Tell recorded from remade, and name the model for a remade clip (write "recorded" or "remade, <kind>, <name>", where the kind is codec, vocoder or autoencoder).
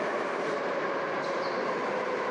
recorded